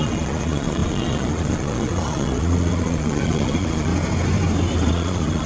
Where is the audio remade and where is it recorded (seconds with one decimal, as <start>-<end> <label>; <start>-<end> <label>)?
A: 0.0-3.9 remade; 3.9-4.9 recorded; 4.9-5.5 remade